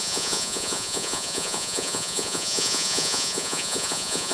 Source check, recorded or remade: remade